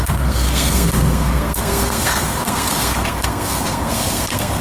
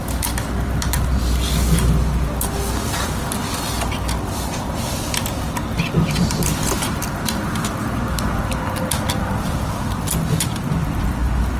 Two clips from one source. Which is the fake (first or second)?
first